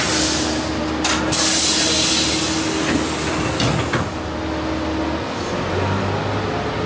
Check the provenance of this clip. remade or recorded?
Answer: recorded